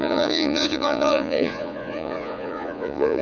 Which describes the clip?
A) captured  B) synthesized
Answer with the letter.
B